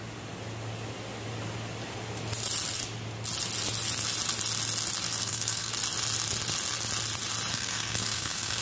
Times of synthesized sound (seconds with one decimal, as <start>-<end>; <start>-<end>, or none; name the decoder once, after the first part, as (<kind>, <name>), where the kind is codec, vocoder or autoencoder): 5.2-5.7 (codec, SNAC); 7.5-8.6